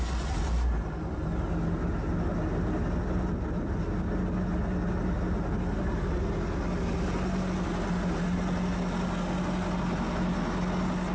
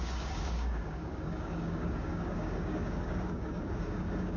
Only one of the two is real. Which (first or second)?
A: first